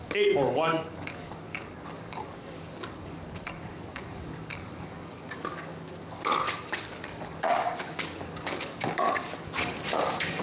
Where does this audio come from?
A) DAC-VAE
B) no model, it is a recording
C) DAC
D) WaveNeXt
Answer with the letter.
C